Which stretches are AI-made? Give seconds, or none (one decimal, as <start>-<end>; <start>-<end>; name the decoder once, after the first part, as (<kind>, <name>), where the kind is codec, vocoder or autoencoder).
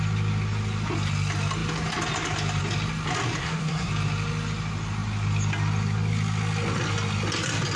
3.4-3.9 (codec, SNAC)